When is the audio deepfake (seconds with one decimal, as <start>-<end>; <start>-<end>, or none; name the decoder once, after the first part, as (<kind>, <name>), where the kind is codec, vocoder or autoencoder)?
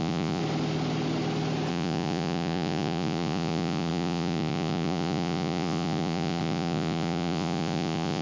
0.0-0.4 (vocoder, Vocos); 1.7-8.2